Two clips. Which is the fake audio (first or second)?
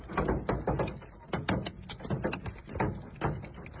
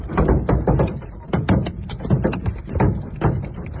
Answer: second